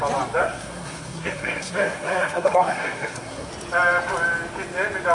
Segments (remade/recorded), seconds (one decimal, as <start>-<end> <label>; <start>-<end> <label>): 0.0-0.4 recorded; 0.4-3.5 remade; 3.5-5.1 recorded